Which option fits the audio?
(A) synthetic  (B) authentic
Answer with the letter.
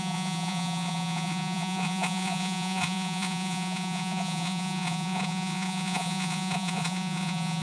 A